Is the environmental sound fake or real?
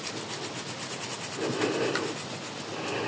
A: real